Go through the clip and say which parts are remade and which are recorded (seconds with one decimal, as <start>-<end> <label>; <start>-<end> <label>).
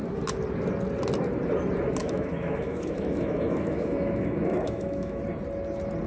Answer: 0.0-2.0 recorded; 2.0-5.2 remade; 5.2-6.1 recorded